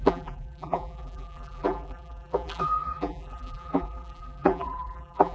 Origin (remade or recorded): remade